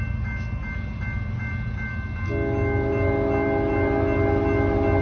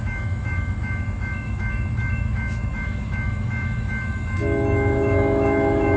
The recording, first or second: first